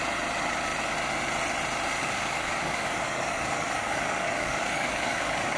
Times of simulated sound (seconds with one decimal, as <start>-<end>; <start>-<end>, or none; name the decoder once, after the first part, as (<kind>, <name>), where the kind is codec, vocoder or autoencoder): 2.0-5.6 (codec, DAC)